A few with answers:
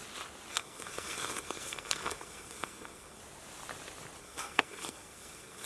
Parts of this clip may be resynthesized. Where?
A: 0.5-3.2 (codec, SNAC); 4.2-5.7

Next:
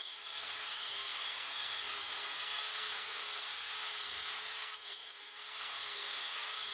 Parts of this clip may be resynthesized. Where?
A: 0.0-6.7 (codec, SNAC)

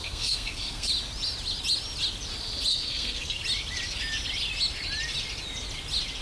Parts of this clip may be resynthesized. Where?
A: 0.0-0.9 (codec, SNAC); 2.7-3.4